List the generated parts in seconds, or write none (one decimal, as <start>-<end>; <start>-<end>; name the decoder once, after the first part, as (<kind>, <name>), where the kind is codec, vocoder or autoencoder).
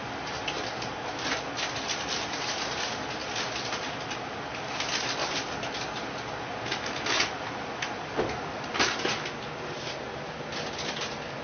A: none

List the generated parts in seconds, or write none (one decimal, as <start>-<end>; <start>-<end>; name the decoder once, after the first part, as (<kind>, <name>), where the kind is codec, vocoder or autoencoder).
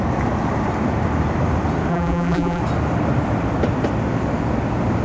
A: 1.9-2.6 (vocoder, BigVGAN v2)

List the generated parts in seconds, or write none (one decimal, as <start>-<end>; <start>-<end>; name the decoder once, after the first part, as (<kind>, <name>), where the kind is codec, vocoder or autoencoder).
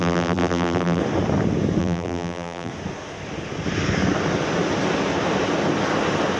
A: 0.0-1.0 (vocoder, BigVGAN v2); 1.8-2.7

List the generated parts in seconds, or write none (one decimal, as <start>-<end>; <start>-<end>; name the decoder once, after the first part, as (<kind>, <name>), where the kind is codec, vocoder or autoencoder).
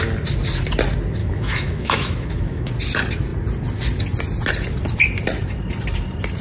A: 1.2-2.7 (autoencoder, DAC-VAE)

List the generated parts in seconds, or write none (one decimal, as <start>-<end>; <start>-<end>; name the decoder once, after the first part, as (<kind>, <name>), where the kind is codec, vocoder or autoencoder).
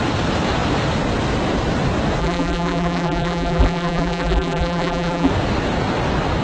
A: 2.2-5.3 (vocoder, BigVGAN v2)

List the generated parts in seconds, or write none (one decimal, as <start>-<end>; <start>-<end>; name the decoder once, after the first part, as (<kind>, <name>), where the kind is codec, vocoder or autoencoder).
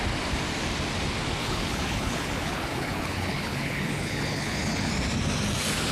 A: 1.4-4.9 (codec, HILCodec)